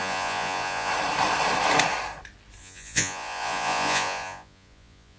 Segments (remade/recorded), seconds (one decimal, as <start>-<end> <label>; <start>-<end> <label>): 0.0-0.9 remade; 0.9-2.6 recorded; 2.6-5.2 remade